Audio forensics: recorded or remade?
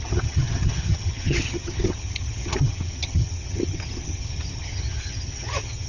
remade